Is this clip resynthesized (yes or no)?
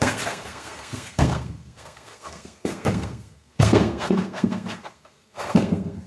yes